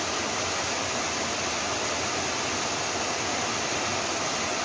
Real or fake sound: real